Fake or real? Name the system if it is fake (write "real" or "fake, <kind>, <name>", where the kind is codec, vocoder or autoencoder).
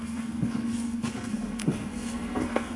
fake, codec, SNAC